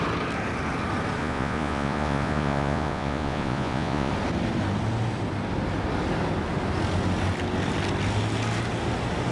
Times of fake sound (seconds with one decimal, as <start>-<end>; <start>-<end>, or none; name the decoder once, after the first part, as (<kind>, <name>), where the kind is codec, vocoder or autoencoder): 1.2-4.1 (vocoder, Vocos)